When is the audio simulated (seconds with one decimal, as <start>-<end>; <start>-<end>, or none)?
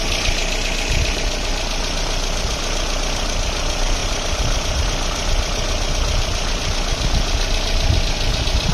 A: 4.0-4.8